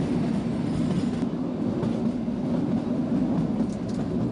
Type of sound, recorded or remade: recorded